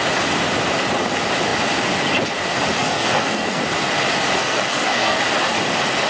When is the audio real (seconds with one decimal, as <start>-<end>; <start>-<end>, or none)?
0.0-2.8; 3.6-4.4; 5.2-6.1